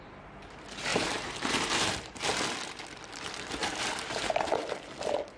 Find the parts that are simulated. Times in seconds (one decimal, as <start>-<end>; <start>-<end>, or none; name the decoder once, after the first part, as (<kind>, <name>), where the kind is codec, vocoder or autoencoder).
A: 0.9-2.2 (vocoder, BigVGAN v2); 3.6-4.2

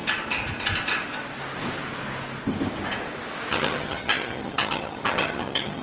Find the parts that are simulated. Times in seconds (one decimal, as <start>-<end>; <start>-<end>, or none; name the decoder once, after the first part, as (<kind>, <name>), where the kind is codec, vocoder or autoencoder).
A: 3.5-5.8 (vocoder, HiFi-GAN)

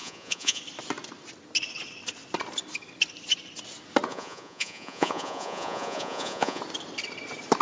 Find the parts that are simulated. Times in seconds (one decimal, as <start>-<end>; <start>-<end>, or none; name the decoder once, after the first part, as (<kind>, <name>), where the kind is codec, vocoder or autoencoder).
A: 0.0-0.6 (vocoder, Vocos); 4.1-6.6

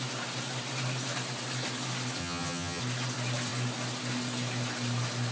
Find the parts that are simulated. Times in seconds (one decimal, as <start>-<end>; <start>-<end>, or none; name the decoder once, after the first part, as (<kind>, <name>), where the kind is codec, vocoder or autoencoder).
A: 2.2-2.8 (vocoder, HiFi-GAN)